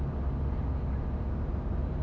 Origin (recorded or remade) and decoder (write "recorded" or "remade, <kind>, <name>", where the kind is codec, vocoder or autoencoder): remade, vocoder, BigVGAN v2